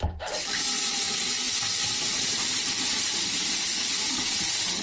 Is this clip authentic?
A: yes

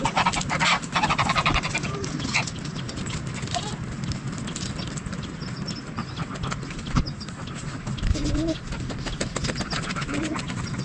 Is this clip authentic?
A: yes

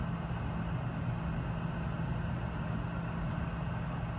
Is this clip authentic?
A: yes